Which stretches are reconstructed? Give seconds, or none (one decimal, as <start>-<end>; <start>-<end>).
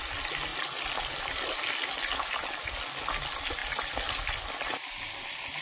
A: none